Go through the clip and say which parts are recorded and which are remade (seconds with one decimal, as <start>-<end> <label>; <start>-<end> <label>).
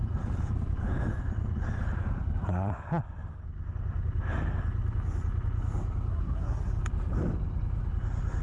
0.0-6.1 recorded; 6.1-6.7 remade; 6.7-8.4 recorded